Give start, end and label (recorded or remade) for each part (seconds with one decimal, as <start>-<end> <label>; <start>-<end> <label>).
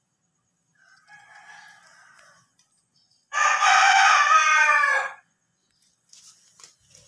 0.0-1.9 recorded; 1.9-6.2 remade; 6.2-7.1 recorded